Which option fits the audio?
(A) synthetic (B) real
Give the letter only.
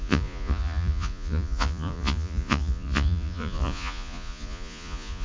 A